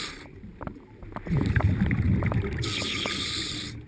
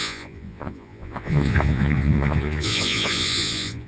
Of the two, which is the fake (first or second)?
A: second